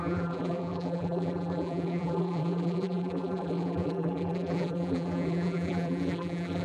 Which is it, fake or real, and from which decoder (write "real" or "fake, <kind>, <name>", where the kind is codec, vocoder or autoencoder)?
fake, vocoder, BigVGAN v2